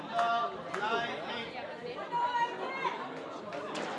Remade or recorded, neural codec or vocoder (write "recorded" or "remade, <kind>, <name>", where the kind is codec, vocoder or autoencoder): recorded